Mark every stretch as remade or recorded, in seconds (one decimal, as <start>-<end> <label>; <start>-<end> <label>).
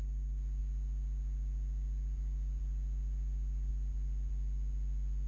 0.0-5.3 recorded